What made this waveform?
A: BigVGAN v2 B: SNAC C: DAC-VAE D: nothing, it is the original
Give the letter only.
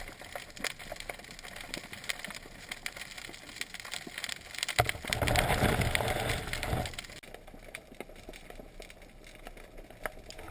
D